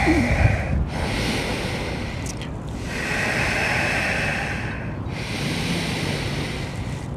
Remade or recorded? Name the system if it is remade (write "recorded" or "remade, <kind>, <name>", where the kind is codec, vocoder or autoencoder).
recorded